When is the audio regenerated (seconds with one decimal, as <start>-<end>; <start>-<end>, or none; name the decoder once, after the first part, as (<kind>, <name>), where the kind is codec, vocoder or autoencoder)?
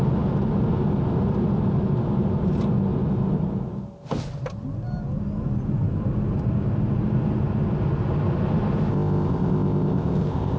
8.9-10.6 (codec, ZipCodec)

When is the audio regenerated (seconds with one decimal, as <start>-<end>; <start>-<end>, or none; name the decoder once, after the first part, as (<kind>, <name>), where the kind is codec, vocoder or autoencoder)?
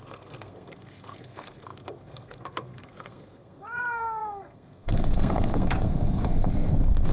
0.0-7.1 (codec, SNAC)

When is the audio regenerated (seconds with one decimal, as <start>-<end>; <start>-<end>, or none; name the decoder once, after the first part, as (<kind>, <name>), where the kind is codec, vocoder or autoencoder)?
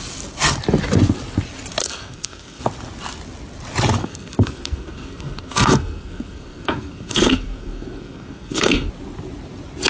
1.8-2.6 (codec, SNAC); 4.0-8.9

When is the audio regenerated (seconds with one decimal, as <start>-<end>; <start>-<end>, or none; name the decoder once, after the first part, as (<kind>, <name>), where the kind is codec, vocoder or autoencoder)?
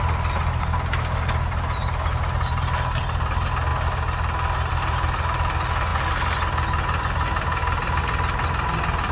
none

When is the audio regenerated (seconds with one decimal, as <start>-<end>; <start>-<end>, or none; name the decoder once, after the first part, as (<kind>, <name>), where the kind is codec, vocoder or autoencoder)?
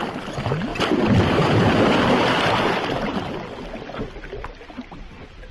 none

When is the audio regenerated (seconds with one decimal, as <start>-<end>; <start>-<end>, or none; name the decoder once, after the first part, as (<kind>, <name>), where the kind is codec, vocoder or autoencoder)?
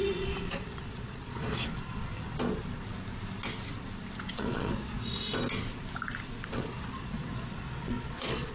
0.0-2.0 (vocoder, Vocos); 4.2-5.3; 6.5-8.5